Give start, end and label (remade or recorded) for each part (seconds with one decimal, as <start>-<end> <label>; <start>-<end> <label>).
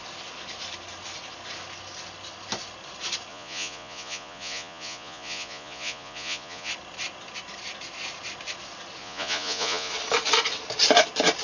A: 0.0-3.3 recorded; 3.3-6.7 remade; 6.7-9.0 recorded; 9.0-9.9 remade; 9.9-11.4 recorded